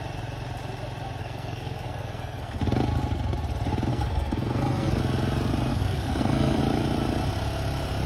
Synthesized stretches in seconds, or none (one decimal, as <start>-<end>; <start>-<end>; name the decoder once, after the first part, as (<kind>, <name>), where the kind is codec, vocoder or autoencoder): 1.2-2.6 (codec, SNAC); 3.9-5.0; 5.7-6.6